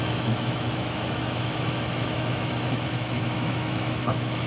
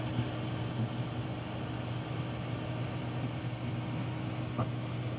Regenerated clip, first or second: first